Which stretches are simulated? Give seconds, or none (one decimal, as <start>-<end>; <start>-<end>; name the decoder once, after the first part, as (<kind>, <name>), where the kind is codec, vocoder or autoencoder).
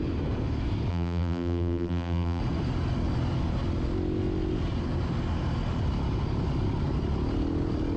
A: 0.9-2.4 (vocoder, BigVGAN v2)